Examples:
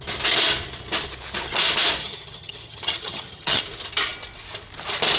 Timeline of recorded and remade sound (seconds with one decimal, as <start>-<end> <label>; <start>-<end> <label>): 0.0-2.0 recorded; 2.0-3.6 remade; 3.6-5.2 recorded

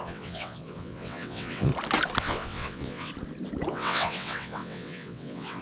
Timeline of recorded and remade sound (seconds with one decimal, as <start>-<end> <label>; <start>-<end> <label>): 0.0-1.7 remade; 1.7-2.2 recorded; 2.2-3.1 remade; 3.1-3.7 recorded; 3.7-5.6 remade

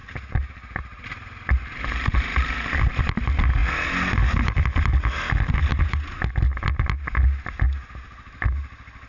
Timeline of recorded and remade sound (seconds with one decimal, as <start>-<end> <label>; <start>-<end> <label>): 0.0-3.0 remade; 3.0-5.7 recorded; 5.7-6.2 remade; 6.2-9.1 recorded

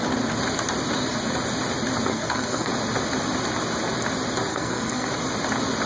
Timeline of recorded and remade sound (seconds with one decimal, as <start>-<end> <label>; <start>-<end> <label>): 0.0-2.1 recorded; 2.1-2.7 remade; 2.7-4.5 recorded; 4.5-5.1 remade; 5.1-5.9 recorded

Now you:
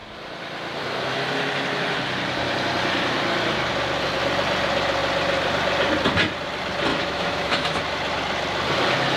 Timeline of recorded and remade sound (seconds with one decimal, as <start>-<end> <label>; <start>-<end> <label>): 0.0-6.9 recorded; 6.9-7.8 remade; 7.8-9.2 recorded